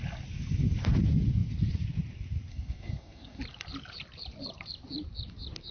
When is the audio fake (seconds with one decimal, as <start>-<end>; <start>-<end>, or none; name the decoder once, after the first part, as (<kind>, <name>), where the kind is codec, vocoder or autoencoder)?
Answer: 2.5-3.4 (codec, SNAC)